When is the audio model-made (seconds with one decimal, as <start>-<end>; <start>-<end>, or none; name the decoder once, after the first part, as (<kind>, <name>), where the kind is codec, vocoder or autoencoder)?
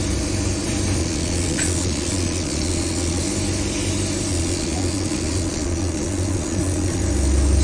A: 1.0-3.2 (vocoder, Vocos); 4.3-7.0